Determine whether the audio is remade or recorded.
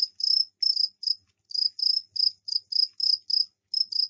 recorded